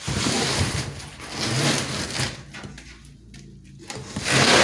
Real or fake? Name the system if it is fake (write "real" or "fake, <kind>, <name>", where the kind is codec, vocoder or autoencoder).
real